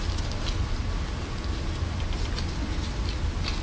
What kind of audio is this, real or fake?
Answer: real